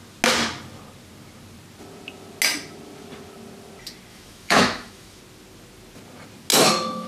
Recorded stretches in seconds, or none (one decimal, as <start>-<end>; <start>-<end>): 0.0-4.1; 5.2-6.5